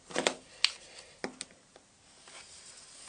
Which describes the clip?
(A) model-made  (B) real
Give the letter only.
B